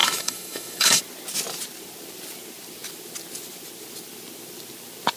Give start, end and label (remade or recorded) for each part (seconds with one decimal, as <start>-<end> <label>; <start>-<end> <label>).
0.0-1.0 remade; 1.0-5.2 recorded

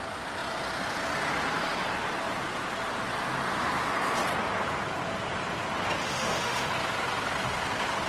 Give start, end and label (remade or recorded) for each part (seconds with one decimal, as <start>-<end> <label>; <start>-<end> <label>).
0.0-6.0 recorded; 6.0-6.7 remade; 6.7-8.1 recorded